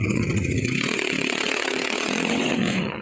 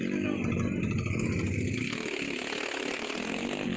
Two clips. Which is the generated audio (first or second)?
first